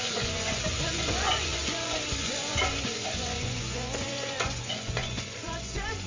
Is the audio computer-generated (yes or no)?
yes